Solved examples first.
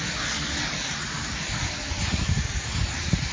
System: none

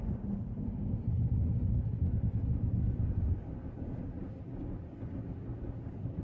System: none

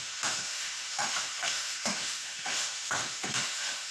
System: autoencoder, DAC-VAE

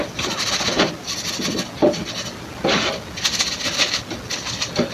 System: none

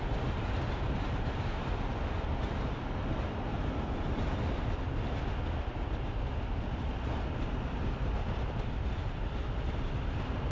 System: none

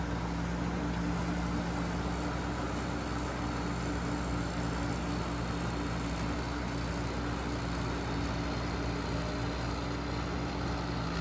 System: none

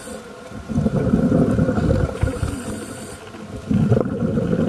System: none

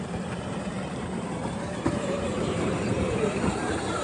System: vocoder, BigVGAN v2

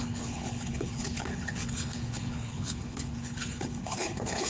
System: codec, HILCodec